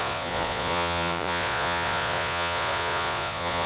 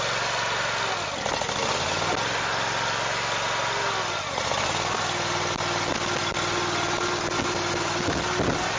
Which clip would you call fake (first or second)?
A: first